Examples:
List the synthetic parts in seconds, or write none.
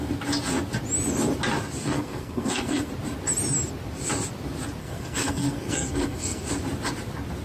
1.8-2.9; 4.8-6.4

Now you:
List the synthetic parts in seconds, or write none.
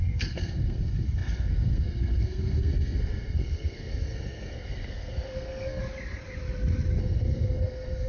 0.0-5.8; 7.0-8.1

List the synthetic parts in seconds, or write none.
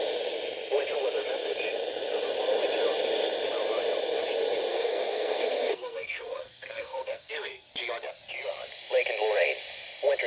4.7-7.7